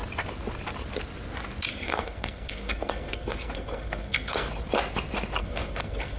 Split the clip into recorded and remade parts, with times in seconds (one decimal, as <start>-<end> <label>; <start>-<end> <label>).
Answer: 0.0-1.7 recorded; 1.7-4.5 remade; 4.5-5.4 recorded; 5.4-6.2 remade